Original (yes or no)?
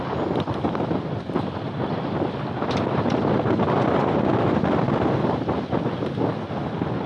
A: yes